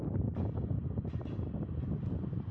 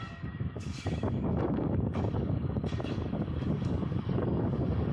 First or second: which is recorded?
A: first